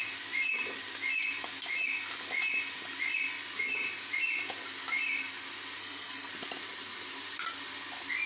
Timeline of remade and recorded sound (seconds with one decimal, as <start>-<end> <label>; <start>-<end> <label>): 0.0-5.8 recorded; 5.8-6.3 remade; 6.3-8.3 recorded